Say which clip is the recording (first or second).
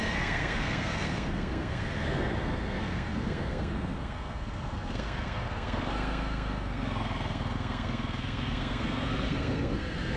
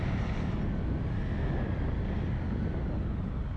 second